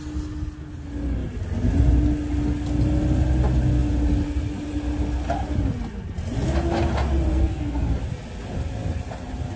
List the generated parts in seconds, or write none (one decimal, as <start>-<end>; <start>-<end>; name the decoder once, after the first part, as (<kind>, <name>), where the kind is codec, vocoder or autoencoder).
7.3-8.0 (codec, SNAC)